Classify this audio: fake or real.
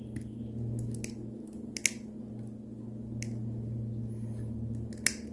real